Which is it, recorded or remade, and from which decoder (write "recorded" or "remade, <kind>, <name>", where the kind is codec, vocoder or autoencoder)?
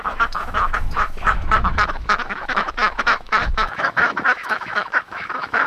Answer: remade, autoencoder, DAC-VAE